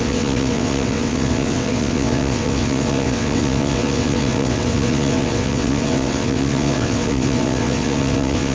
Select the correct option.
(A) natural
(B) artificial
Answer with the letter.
B